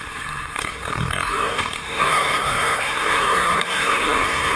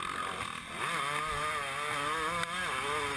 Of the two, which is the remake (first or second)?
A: first